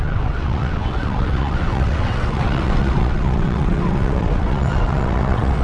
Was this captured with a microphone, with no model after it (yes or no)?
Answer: no